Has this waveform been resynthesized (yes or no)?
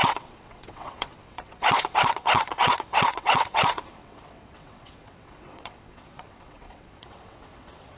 yes